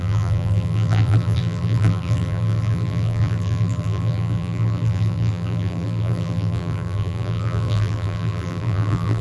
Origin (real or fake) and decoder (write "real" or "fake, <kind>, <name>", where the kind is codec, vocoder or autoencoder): fake, vocoder, BigVGAN v2